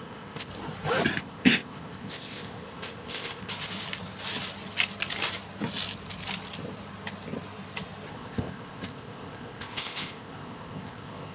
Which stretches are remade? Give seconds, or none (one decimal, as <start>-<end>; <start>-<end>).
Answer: 0.0-0.5; 1.2-3.5; 8.1-11.3